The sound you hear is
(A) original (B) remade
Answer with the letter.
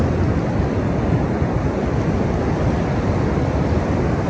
A